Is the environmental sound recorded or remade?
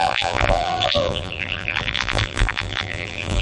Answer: remade